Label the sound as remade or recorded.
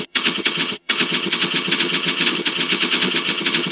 remade